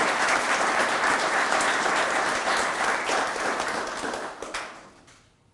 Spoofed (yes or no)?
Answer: no